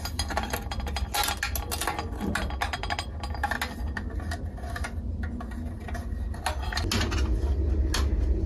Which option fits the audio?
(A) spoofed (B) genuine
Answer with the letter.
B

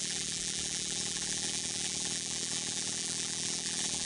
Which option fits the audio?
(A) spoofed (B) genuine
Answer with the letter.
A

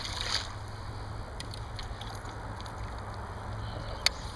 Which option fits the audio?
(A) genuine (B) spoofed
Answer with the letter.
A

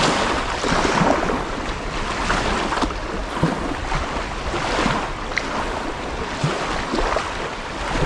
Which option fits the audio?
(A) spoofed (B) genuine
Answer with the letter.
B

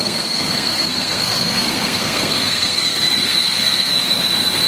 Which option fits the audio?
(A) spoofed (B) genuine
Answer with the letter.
A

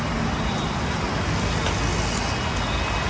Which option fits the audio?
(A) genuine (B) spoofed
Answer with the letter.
A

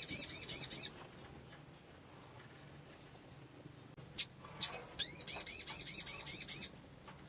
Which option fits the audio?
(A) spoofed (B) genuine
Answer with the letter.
B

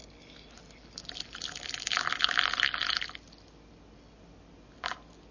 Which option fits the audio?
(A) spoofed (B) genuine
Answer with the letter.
B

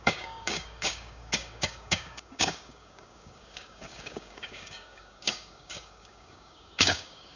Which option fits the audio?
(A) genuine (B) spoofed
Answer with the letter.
B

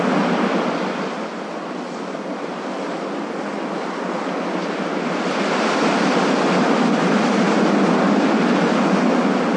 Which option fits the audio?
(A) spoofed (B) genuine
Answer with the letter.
B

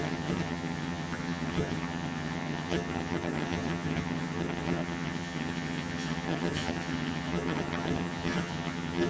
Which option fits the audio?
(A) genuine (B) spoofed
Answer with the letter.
B